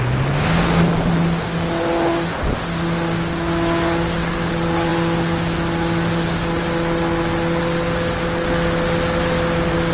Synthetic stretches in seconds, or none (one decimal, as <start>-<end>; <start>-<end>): none